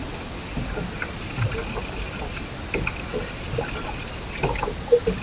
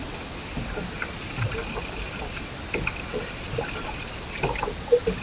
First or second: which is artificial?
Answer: second